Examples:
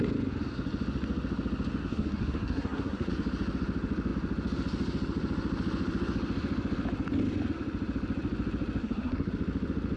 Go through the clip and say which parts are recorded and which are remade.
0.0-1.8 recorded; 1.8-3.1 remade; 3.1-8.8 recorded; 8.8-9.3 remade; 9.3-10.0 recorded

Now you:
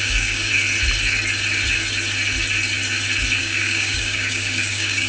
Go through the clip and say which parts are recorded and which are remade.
0.0-0.5 remade; 0.5-3.4 recorded; 3.4-5.1 remade

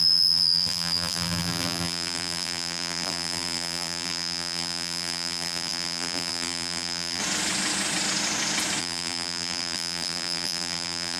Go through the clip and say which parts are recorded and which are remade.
0.0-7.2 remade; 7.2-8.8 recorded; 8.8-11.2 remade

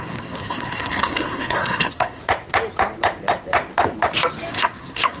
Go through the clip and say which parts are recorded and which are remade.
0.0-2.2 remade; 2.2-4.5 recorded; 4.5-5.2 remade